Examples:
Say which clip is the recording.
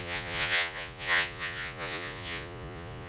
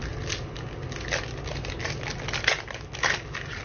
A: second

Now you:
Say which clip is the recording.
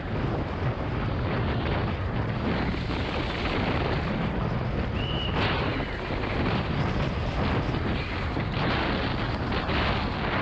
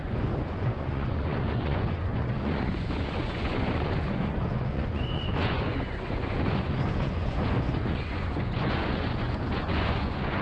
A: first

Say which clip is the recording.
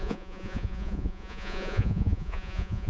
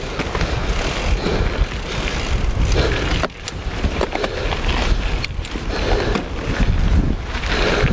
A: second